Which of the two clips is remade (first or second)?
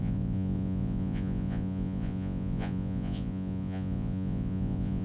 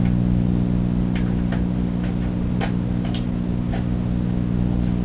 first